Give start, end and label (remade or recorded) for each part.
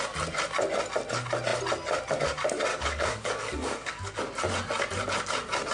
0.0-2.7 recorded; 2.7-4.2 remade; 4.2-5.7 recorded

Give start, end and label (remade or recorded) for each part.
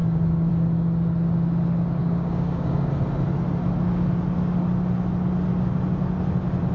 0.0-0.5 remade; 0.5-2.0 recorded; 2.0-2.9 remade; 2.9-6.7 recorded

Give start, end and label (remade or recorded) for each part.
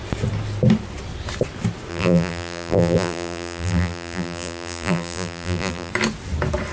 0.0-1.9 recorded; 1.9-5.9 remade; 5.9-6.7 recorded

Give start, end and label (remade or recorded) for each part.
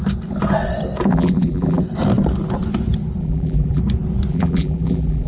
0.0-1.1 recorded; 1.1-1.8 remade; 1.8-3.2 recorded; 3.2-3.8 remade; 3.8-4.3 recorded; 4.3-5.3 remade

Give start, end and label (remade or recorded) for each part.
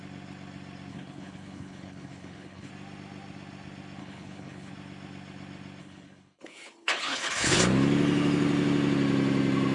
0.0-0.9 recorded; 0.9-2.7 remade; 2.7-4.0 recorded; 4.0-4.7 remade; 4.7-5.8 recorded; 5.8-7.6 remade; 7.6-9.7 recorded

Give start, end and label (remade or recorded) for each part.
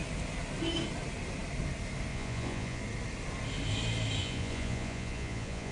0.0-2.1 recorded; 2.1-2.8 remade; 2.8-4.2 recorded; 4.2-5.7 remade